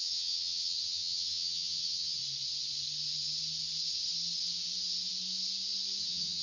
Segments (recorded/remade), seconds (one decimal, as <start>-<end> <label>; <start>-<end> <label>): 0.0-2.2 remade; 2.2-6.0 recorded; 6.0-6.4 remade